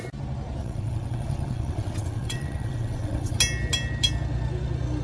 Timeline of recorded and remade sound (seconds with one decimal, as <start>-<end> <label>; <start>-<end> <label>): 0.0-0.6 recorded; 0.6-3.4 remade; 3.4-5.0 recorded